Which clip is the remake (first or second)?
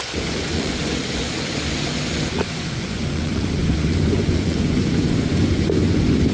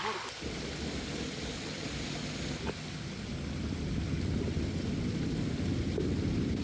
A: first